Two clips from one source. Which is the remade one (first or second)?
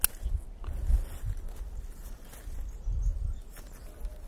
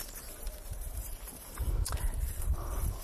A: second